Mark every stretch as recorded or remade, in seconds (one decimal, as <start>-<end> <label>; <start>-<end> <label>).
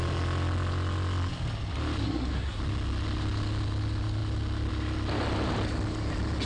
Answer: 0.0-2.0 recorded; 2.0-2.6 remade; 2.6-6.5 recorded